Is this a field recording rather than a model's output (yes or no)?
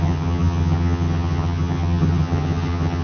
no